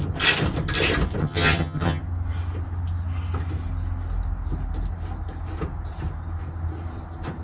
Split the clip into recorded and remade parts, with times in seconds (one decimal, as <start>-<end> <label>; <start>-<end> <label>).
0.0-1.2 recorded; 1.2-2.0 remade; 2.0-7.4 recorded